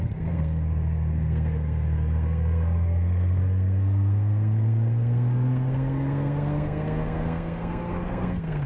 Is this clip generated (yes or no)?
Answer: yes